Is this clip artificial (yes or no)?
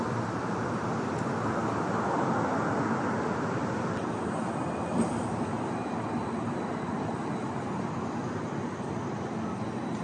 no